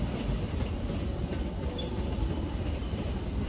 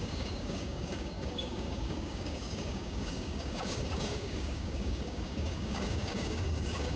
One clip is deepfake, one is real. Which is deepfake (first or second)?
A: second